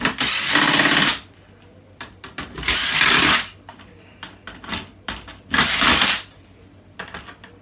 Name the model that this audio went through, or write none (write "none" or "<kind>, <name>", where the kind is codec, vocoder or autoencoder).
none